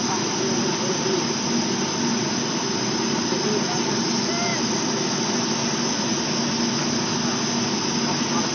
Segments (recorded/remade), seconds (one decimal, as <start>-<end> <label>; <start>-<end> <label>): 0.0-8.5 recorded